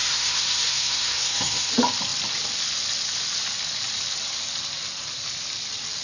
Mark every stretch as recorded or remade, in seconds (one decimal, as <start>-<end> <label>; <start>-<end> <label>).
0.0-1.7 remade; 1.7-6.0 recorded